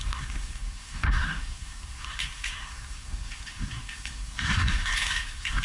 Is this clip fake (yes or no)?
yes